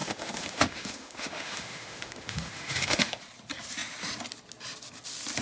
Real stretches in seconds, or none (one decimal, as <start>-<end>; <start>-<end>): 3.2-5.4